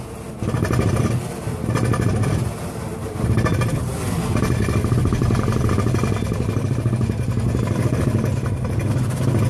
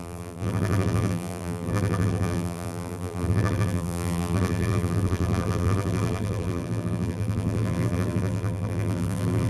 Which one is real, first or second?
first